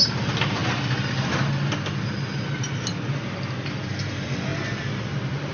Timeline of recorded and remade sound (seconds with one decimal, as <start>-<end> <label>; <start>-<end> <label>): 0.0-5.5 recorded